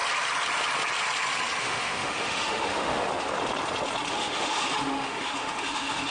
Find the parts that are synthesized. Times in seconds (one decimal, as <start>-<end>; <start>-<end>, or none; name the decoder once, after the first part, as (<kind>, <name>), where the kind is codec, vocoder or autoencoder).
1.6-3.1 (autoencoder, DAC-VAE); 4.1-6.1